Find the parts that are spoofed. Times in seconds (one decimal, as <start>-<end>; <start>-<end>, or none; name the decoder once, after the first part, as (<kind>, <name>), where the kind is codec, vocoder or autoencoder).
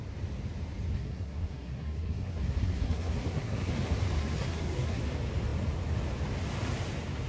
0.9-3.7 (codec, SNAC); 4.2-5.0